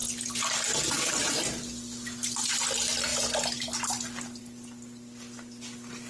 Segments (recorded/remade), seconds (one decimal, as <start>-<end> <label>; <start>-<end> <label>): 0.0-6.1 recorded